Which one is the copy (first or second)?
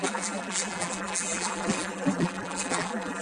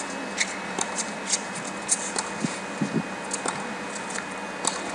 first